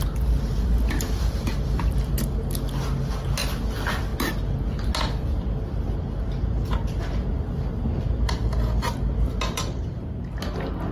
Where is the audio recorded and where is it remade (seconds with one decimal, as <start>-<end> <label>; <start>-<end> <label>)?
0.0-10.9 recorded